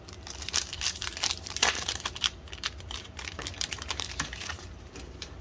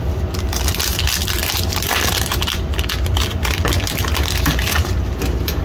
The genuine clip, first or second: second